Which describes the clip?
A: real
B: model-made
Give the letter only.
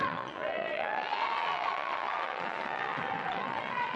B